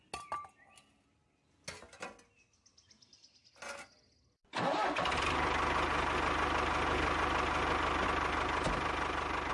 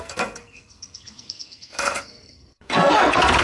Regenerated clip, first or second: second